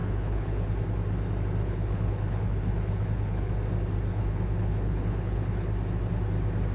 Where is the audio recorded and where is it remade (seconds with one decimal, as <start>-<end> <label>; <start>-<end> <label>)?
0.0-0.7 remade; 0.7-1.6 recorded; 1.6-3.5 remade; 3.5-4.1 recorded; 4.1-5.7 remade; 5.7-6.7 recorded